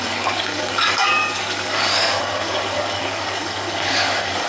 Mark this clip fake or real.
fake